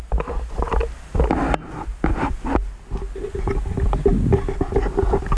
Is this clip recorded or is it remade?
recorded